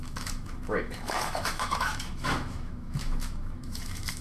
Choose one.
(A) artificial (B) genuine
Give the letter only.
A